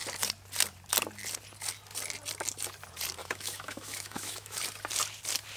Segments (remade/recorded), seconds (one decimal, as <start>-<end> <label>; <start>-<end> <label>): 0.0-3.2 recorded; 3.2-4.6 remade; 4.6-5.6 recorded